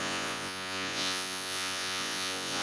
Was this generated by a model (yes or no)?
yes